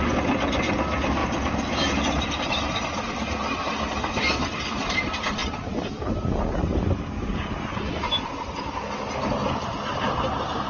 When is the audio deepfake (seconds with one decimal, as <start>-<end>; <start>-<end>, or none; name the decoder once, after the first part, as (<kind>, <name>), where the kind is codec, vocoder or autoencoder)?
none